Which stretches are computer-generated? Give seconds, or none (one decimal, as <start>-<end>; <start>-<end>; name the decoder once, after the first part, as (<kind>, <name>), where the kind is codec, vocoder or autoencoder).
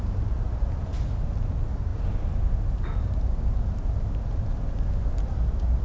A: none